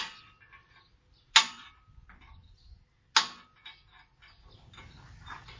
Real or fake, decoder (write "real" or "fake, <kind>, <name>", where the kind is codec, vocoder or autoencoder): real